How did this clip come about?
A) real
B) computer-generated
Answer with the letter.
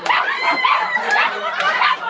A